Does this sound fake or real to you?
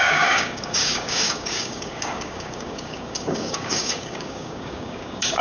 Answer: fake